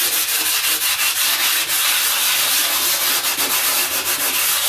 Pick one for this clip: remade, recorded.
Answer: recorded